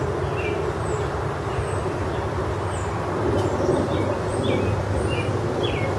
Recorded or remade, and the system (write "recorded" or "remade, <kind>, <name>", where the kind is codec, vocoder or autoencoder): recorded